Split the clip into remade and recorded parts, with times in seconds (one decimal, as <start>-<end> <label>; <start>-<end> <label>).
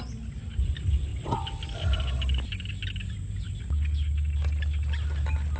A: 0.0-5.6 recorded